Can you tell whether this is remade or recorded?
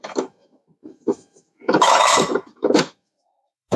remade